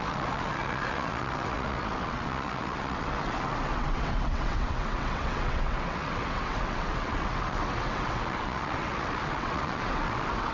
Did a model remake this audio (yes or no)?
yes